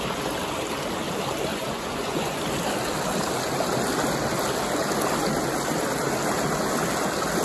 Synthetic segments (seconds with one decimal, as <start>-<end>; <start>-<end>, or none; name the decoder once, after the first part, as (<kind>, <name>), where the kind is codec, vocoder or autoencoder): 1.5-2.4 (vocoder, Vocos)